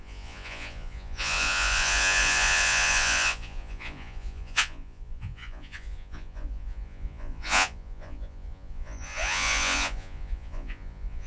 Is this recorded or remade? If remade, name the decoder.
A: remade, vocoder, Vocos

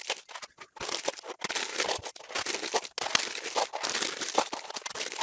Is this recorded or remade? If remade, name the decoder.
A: recorded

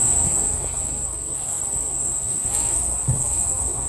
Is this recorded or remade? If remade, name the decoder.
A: remade, codec, SNAC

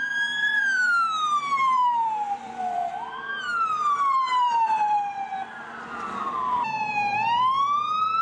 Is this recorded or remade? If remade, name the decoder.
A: remade, vocoder, BigVGAN v2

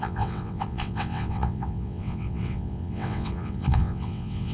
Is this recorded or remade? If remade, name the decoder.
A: remade, vocoder, WaveNeXt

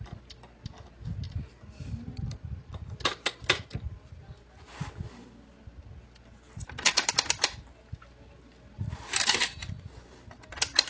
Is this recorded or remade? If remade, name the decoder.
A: recorded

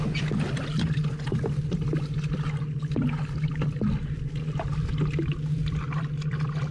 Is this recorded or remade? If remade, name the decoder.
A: recorded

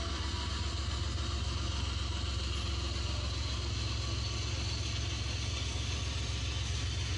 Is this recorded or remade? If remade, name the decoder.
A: recorded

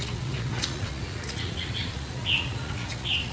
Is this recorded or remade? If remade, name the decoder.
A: remade, vocoder, Vocos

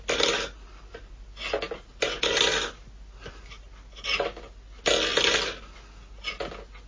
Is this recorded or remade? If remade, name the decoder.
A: recorded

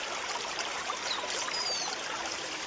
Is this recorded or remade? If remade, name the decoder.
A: recorded